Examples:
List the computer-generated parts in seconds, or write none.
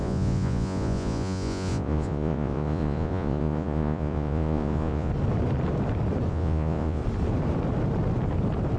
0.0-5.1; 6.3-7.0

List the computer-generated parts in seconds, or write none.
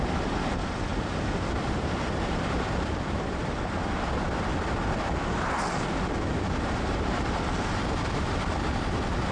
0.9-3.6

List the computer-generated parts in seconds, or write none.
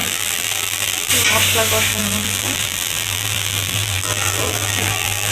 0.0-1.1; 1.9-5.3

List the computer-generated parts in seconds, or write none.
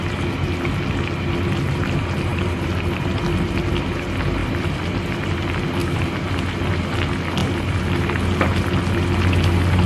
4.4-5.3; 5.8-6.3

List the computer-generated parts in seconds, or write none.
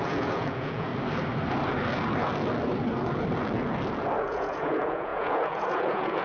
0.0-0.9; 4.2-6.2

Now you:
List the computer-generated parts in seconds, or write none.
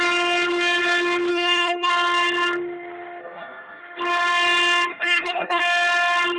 1.3-1.9; 3.2-3.8; 4.9-5.6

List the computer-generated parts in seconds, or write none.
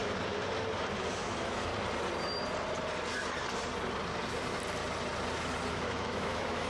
1.1-1.7; 5.7-6.7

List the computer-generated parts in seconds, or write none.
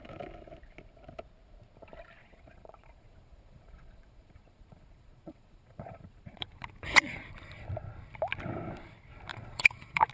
2.2-7.2; 9.3-10.1